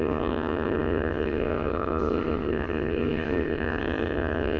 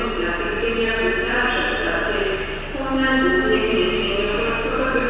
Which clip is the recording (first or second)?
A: second